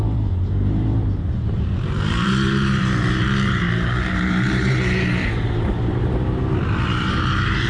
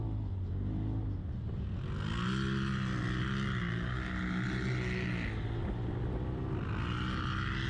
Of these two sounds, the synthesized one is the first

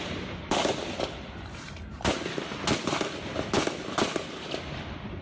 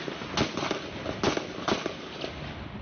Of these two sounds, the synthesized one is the first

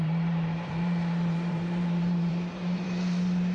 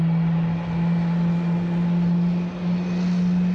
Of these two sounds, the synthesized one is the first